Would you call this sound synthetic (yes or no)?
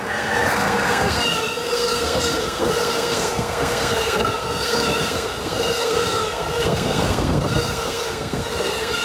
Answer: yes